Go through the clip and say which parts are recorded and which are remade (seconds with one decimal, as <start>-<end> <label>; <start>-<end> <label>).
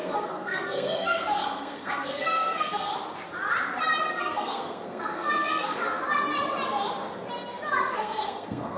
0.0-2.9 remade; 2.9-4.2 recorded; 4.2-5.8 remade; 5.8-7.9 recorded; 7.9-8.8 remade